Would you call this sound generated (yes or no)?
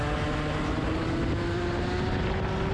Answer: no